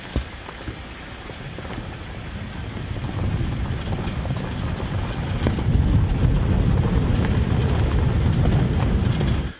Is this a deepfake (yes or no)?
no